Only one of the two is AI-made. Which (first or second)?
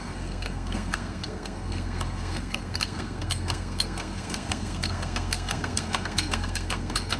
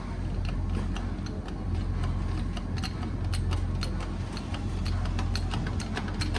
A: first